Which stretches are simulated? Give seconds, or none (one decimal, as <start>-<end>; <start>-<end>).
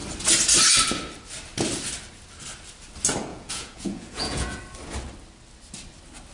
3.3-4.6